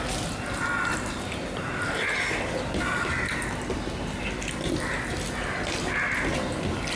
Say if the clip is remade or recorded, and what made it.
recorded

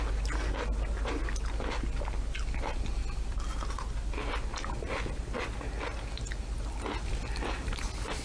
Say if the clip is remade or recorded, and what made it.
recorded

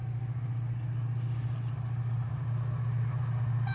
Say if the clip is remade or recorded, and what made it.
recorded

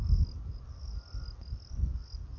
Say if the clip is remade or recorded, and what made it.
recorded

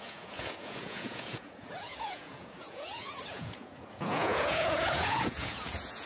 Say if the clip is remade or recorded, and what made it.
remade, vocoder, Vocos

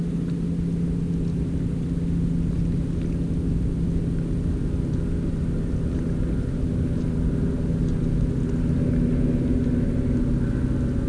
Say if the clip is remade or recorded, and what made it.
recorded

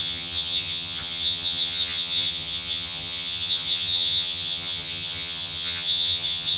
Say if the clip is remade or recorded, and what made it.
remade, vocoder, HiFi-GAN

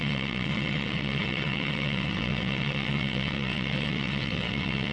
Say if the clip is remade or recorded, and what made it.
remade, vocoder, WaveNeXt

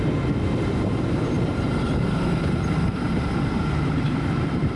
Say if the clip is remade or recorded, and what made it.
remade, vocoder, BigVGAN v2